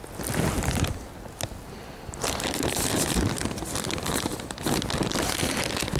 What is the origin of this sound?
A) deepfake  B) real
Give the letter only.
B